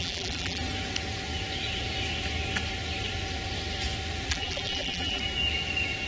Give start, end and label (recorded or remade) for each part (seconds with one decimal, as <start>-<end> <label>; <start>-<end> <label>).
0.0-0.6 remade; 0.6-4.3 recorded; 4.3-5.2 remade; 5.2-6.1 recorded